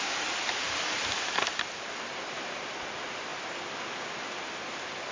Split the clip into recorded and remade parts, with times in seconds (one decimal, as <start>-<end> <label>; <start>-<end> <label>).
0.0-5.1 recorded